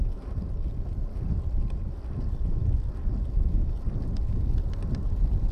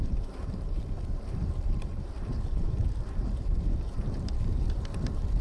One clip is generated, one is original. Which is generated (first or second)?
second